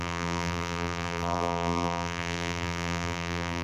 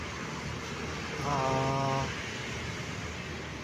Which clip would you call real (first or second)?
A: second